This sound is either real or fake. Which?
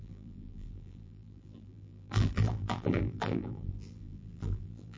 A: fake